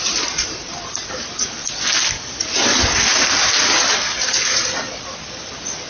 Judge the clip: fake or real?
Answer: fake